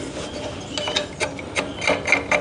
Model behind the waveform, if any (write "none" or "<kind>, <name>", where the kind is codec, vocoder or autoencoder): none